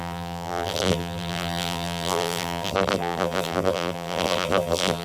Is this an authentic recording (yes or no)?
no